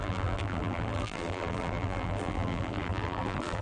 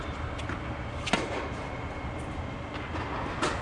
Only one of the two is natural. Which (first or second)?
second